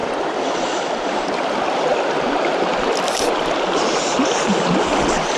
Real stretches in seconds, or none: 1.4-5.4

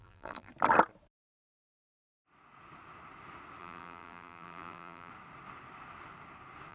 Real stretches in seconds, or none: 0.5-3.6; 5.1-6.7

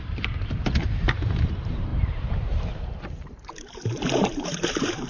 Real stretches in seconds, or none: none

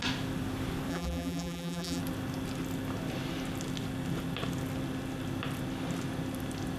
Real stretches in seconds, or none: 0.0-0.9; 2.0-6.8

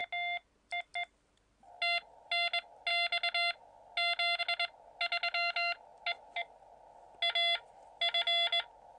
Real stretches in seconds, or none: 0.0-9.0

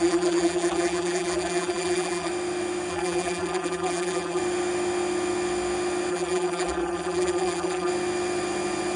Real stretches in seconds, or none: 2.3-2.9; 4.4-6.1; 7.9-9.0

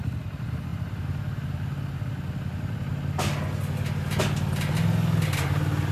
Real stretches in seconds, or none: 0.0-5.9